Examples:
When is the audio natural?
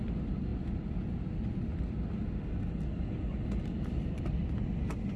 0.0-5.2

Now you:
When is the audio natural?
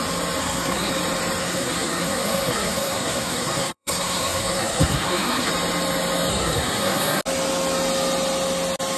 0.0-0.4; 0.9-1.4; 5.5-6.3; 7.2-9.0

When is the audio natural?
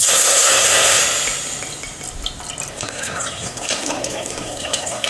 1.0-2.7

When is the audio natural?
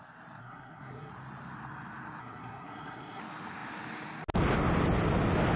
0.0-0.4; 1.1-2.2; 3.2-5.6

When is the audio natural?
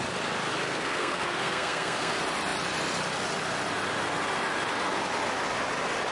0.0-0.6; 2.1-6.1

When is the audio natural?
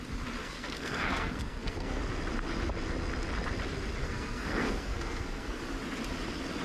0.0-0.4; 2.0-4.0; 5.6-6.6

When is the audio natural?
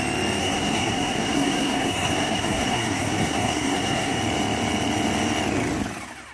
0.0-0.4; 4.2-6.3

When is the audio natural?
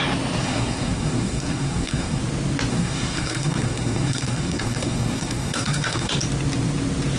0.0-0.4; 2.2-2.7; 6.1-7.2